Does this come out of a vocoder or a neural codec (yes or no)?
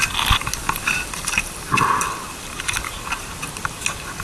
no